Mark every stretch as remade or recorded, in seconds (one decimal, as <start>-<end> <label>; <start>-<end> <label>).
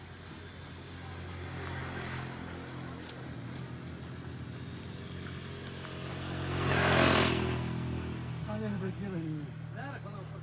0.0-6.1 recorded; 6.1-8.9 remade; 8.9-10.4 recorded